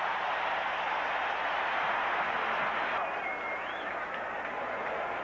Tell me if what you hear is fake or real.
real